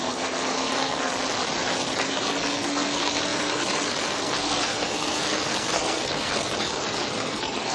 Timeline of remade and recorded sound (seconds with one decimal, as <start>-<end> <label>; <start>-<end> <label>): 0.0-1.1 remade; 1.1-2.0 recorded; 2.0-7.7 remade